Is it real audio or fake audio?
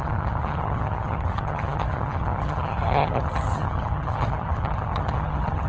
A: fake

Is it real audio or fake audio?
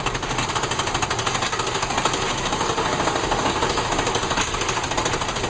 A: real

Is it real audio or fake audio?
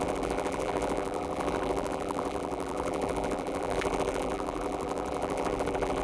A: fake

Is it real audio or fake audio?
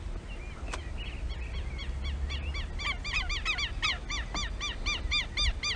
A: real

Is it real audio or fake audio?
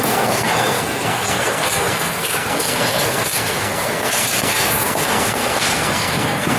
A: fake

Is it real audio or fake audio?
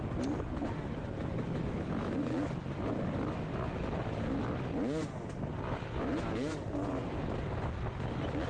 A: real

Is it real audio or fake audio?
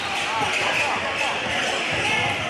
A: real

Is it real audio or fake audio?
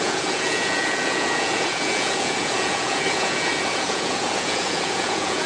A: fake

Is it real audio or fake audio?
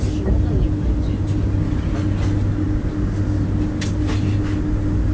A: real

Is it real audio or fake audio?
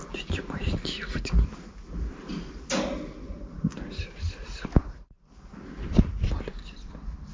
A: real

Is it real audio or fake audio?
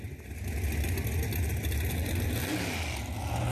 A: real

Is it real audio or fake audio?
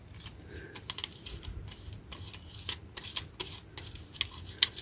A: real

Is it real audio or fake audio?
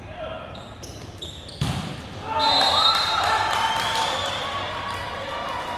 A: fake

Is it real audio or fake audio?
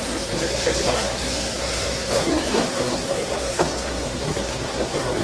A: fake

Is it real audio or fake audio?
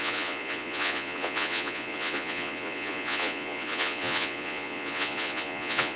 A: fake